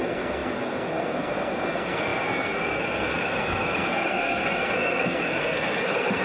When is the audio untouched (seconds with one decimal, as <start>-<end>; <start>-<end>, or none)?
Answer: none